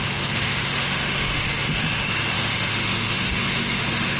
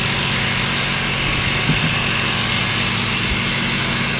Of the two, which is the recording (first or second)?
second